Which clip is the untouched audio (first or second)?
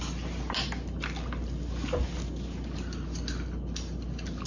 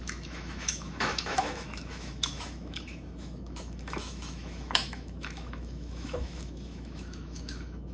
first